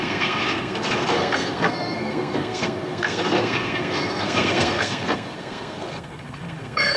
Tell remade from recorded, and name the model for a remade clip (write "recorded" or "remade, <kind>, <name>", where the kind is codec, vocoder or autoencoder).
remade, codec, SNAC